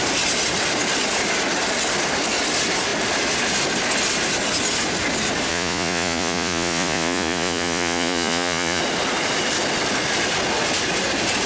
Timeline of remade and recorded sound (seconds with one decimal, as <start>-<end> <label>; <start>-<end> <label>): 0.0-5.5 recorded; 5.5-8.8 remade; 8.8-11.5 recorded